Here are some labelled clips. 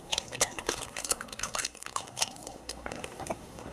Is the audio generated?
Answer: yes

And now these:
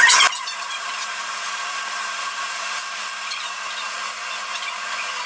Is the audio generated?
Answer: no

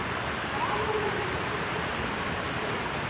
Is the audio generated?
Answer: no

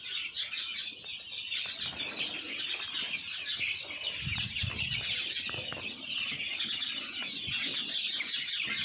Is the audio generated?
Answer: no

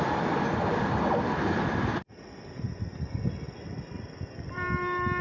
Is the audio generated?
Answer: no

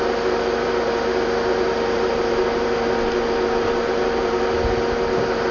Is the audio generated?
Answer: no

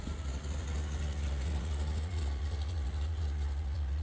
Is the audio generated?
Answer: yes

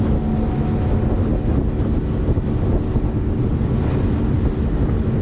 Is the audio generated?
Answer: no